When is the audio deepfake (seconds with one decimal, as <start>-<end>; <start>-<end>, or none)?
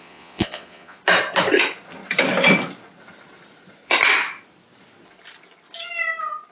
0.0-1.0